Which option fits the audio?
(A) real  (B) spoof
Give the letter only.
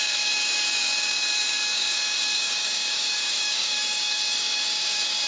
B